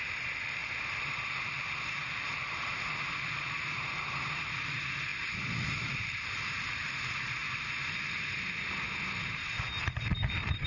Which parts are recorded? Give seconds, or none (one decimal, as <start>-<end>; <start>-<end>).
0.6-3.7; 5.1-5.8; 7.4-9.5